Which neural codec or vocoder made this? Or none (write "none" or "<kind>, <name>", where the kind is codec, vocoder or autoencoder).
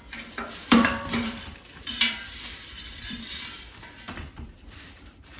vocoder, BigVGAN v2